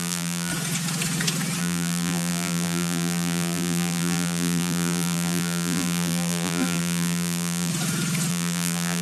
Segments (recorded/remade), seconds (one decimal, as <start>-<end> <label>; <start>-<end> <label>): 0.0-0.5 remade; 0.5-1.6 recorded; 1.6-7.7 remade; 7.7-8.3 recorded; 8.3-9.0 remade